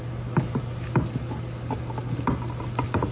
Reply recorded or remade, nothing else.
recorded